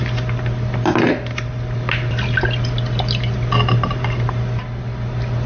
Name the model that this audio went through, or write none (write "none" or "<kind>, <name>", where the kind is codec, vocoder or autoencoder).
none